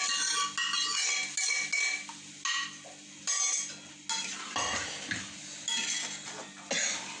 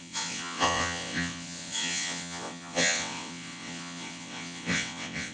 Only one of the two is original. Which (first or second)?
first